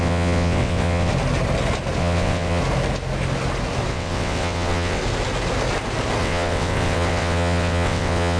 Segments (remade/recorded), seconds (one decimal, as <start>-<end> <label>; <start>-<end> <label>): 0.0-1.1 remade; 1.1-2.0 recorded; 2.0-2.6 remade; 2.6-3.9 recorded; 3.9-5.0 remade; 5.0-6.2 recorded; 6.2-8.4 remade